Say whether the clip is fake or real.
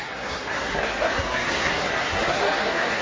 fake